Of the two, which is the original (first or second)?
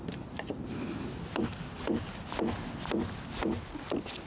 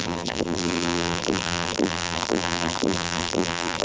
first